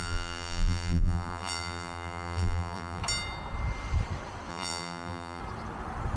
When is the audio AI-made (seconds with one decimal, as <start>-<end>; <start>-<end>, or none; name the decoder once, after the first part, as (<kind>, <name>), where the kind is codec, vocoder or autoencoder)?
0.0-3.0 (vocoder, BigVGAN v2); 4.5-5.4